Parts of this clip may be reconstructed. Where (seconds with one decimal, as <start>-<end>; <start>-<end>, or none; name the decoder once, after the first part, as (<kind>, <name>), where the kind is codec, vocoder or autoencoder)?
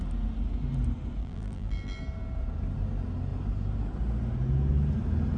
1.2-2.0 (vocoder, BigVGAN v2)